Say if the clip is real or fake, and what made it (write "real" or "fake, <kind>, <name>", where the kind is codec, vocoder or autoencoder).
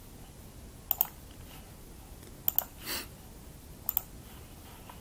real